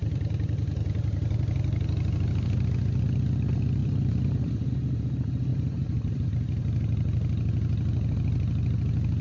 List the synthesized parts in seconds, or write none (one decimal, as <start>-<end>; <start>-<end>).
0.0-1.5; 3.8-4.7; 5.5-6.3